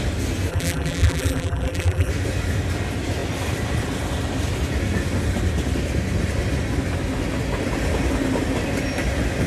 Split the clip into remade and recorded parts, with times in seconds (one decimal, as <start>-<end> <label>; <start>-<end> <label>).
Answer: 0.0-0.5 recorded; 0.5-2.1 remade; 2.1-9.5 recorded